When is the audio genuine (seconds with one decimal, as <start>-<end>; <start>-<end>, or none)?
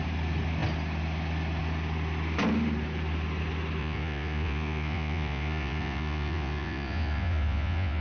0.0-3.8